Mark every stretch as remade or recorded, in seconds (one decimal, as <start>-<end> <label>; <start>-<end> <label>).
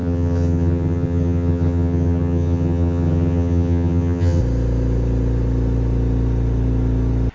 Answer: 0.0-4.4 remade; 4.4-7.3 recorded